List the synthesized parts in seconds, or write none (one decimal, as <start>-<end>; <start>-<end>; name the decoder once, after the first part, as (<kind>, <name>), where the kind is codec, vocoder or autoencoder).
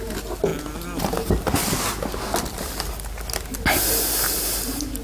none